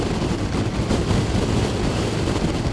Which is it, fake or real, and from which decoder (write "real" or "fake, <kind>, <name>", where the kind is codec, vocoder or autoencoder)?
real